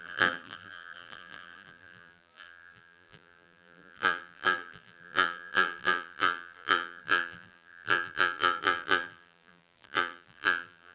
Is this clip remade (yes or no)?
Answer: yes